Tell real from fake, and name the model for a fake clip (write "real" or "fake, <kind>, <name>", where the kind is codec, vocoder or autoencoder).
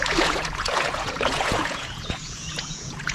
fake, vocoder, Vocos